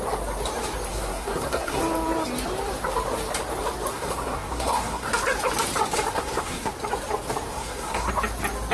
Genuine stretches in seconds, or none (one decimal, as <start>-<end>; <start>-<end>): 0.0-0.9; 1.8-3.9; 5.1-6.1; 6.7-7.5; 8.1-8.7